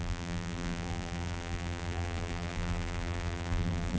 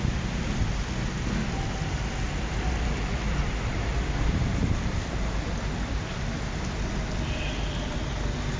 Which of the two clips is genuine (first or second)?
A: second